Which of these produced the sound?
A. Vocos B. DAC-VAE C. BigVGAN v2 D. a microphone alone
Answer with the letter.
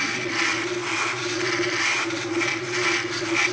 D